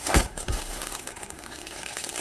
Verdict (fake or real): fake